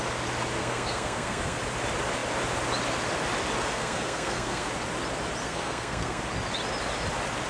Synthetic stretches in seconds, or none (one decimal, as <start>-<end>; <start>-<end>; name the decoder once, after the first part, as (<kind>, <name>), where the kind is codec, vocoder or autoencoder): 0.6-1.6 (codec, SNAC); 3.7-4.7; 5.4-6.2